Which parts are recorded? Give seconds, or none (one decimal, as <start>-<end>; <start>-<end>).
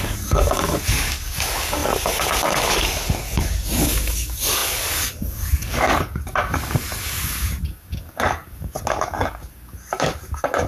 none